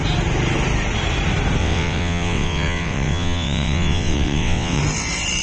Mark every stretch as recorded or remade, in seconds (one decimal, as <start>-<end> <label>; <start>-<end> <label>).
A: 0.0-1.6 recorded; 1.6-4.8 remade; 4.8-5.4 recorded